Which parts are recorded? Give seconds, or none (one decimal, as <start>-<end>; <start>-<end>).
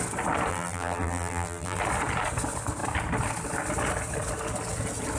0.0-0.5; 1.8-5.2